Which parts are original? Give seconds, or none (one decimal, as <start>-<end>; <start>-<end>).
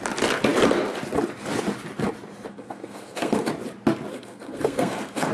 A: 0.0-2.5; 3.5-4.1